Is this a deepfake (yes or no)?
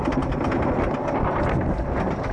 no